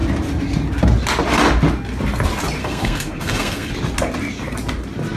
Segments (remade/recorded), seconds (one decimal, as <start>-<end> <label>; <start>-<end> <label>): 0.0-2.6 recorded; 2.6-3.7 remade; 3.7-5.2 recorded